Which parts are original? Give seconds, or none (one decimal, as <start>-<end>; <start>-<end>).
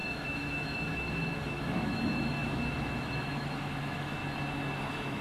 4.2-4.8